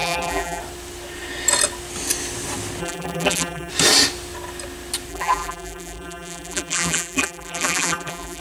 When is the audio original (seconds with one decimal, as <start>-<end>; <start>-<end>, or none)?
0.6-2.8; 3.7-5.1